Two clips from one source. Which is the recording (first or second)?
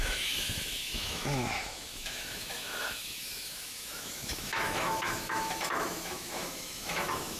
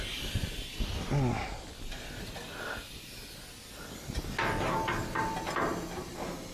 second